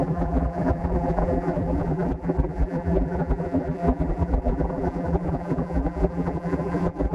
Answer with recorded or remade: remade